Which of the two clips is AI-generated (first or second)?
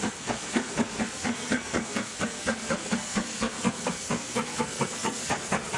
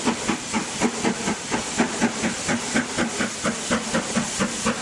first